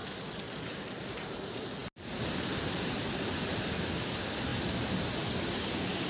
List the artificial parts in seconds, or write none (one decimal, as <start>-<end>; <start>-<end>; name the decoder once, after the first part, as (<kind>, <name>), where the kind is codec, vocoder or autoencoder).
none